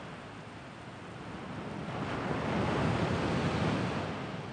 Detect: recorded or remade recorded